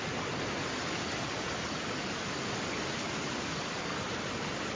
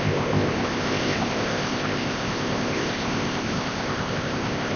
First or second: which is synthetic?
second